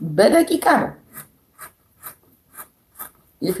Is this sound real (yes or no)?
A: no